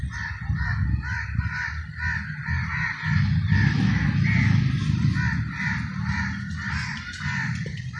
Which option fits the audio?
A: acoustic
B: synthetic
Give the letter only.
A